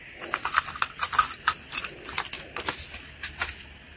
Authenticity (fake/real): real